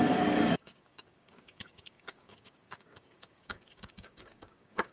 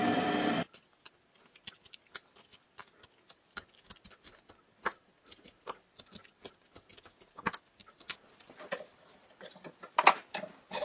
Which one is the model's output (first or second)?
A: first